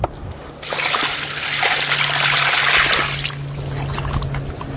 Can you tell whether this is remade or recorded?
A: recorded